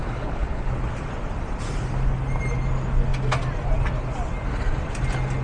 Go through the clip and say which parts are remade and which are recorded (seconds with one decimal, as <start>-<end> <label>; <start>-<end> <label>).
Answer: 0.0-0.7 remade; 0.7-5.4 recorded